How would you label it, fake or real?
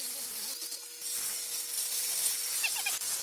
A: real